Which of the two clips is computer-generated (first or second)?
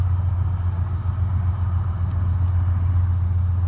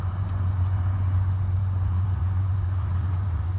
second